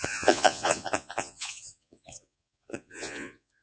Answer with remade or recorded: remade